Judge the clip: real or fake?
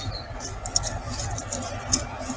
real